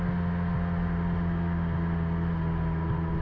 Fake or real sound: real